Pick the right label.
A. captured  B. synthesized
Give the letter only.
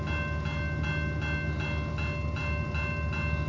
A